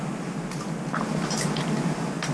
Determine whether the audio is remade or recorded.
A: recorded